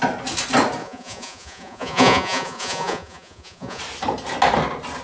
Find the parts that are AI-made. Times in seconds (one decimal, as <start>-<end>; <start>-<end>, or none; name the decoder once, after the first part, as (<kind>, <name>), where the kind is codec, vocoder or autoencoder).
0.8-3.8 (vocoder, Vocos)